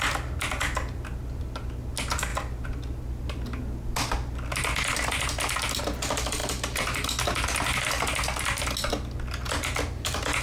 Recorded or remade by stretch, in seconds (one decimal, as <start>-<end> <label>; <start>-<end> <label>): 0.0-10.4 recorded